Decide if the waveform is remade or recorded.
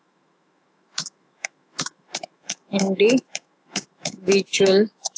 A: remade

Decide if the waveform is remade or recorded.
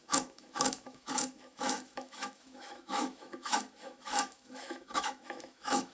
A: remade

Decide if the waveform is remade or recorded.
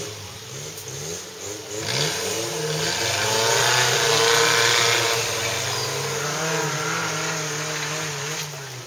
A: recorded